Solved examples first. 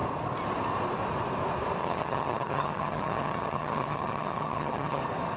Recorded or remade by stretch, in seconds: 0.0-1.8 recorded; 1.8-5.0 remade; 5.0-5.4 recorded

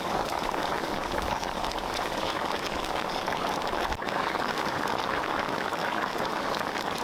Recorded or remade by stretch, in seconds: 0.0-7.0 remade

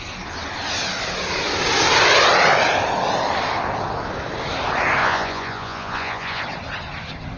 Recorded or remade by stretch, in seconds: 0.0-5.0 recorded; 5.0-6.4 remade; 6.4-7.4 recorded

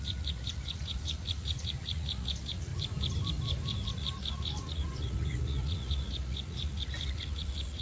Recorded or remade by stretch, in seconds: 0.0-2.7 remade; 2.7-3.9 recorded; 3.9-7.8 remade